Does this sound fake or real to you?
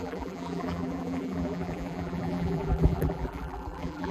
fake